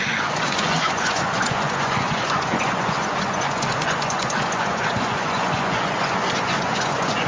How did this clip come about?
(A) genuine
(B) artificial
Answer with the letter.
B